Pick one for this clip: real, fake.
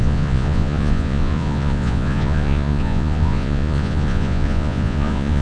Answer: fake